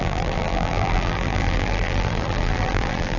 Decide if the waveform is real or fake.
fake